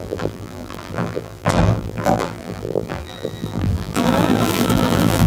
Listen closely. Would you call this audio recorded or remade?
remade